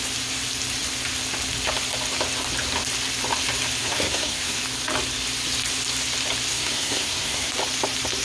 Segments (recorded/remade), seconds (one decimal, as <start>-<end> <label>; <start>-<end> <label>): 0.0-3.8 recorded; 3.8-4.6 remade; 4.6-6.5 recorded; 6.5-7.5 remade; 7.5-8.2 recorded